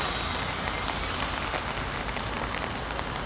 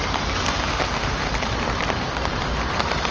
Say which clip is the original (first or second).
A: first